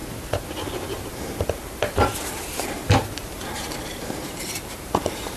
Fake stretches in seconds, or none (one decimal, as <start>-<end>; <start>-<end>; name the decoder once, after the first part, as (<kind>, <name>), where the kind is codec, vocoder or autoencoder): 1.0-5.4 (vocoder, BigVGAN v2)